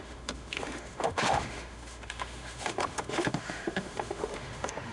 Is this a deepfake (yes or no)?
yes